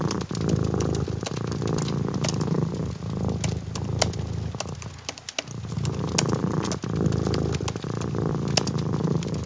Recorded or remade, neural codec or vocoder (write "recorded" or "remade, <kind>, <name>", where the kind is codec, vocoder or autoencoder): recorded